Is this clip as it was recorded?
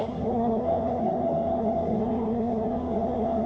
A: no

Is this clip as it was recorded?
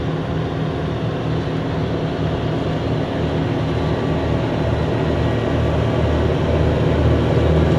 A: yes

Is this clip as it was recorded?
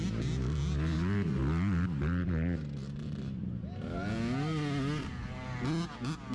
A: yes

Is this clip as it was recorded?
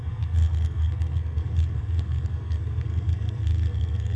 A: no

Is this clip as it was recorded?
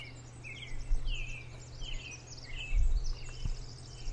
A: yes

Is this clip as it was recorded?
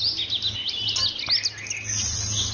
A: yes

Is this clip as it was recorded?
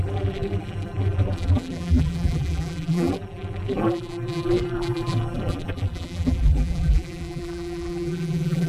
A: no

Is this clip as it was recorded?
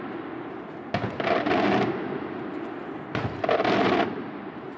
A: yes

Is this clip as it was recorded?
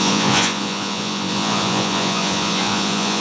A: no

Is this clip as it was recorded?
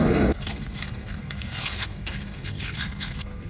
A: no